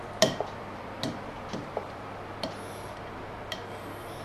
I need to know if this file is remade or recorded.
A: remade